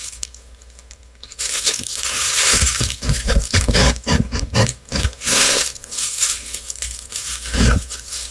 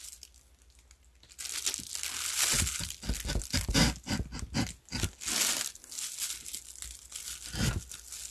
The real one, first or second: second